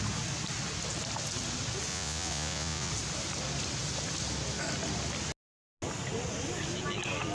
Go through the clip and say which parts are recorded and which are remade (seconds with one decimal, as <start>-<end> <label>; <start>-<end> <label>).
0.0-1.9 recorded; 1.9-2.9 remade; 2.9-7.3 recorded